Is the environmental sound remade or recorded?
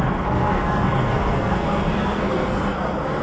remade